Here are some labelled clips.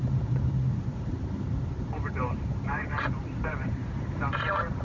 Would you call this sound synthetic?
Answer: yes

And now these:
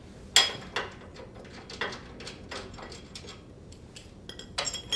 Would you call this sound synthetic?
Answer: no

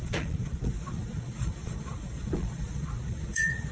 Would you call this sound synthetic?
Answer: yes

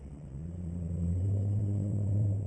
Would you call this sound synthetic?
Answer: yes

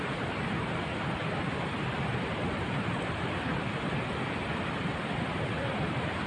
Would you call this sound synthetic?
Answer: no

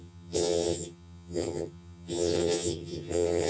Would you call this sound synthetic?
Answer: yes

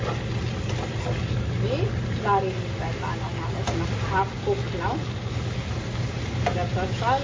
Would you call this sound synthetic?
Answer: no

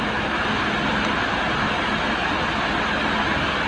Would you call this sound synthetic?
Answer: no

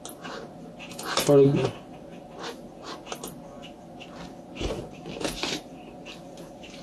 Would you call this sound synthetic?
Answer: no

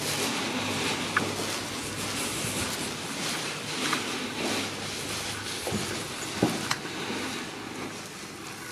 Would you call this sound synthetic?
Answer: no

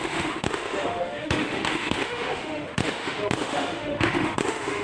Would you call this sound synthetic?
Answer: yes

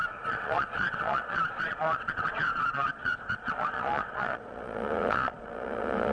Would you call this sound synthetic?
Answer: yes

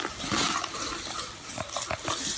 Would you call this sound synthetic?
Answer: no